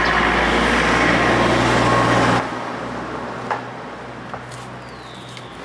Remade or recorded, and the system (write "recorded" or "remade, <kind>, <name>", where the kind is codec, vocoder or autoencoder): recorded